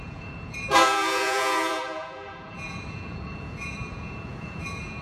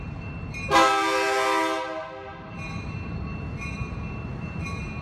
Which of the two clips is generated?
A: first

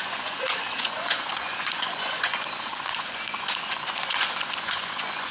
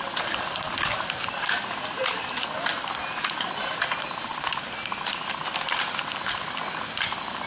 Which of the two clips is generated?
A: first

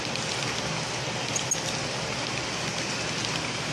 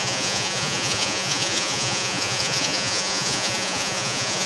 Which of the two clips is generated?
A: second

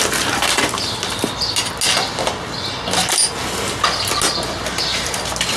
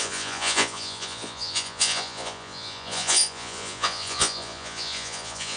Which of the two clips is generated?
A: second